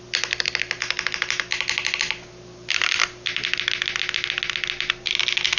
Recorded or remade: recorded